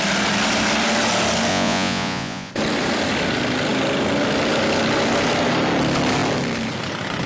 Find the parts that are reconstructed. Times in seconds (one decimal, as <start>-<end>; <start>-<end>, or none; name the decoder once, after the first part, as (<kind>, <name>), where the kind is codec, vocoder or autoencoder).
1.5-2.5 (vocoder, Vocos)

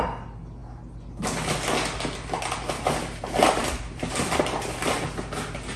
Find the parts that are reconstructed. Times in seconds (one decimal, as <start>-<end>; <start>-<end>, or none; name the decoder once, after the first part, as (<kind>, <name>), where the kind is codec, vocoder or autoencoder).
3.6-5.0 (vocoder, BigVGAN v2)

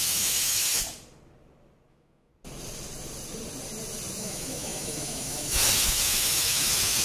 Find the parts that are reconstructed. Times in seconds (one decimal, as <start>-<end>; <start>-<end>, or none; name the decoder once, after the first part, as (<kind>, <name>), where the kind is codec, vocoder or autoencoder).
0.0-0.8 (autoencoder, DAC-VAE); 1.9-2.3; 4.2-7.0